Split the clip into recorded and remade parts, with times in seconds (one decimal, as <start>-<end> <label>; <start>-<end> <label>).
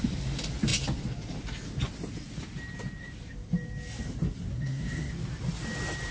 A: 0.0-4.5 recorded; 4.5-5.1 remade; 5.1-6.1 recorded